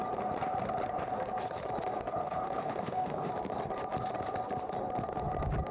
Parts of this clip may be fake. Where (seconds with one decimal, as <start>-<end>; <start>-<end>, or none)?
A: 2.2-3.3